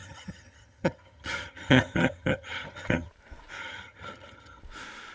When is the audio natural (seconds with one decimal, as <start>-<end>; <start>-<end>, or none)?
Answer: 3.1-3.6; 4.6-5.1

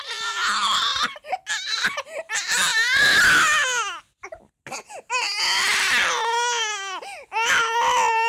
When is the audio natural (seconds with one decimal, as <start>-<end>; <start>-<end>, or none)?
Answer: 0.0-8.3

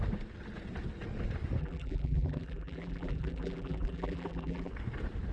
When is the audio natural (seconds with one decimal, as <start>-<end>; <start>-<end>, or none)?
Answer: 0.0-1.6; 4.7-5.3

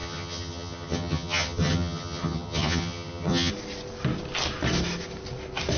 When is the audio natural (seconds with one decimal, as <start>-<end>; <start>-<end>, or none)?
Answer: 3.5-5.8

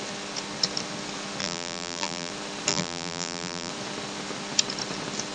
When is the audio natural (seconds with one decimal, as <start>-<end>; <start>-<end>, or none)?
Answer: 0.0-1.4; 2.3-2.7; 3.7-5.3